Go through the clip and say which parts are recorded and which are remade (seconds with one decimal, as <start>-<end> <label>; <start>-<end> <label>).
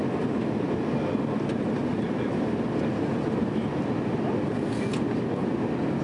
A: 0.0-6.0 recorded